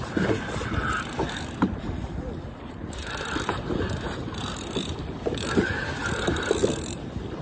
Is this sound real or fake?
real